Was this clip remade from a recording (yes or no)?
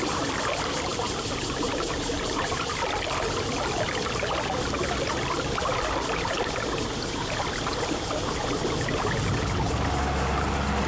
no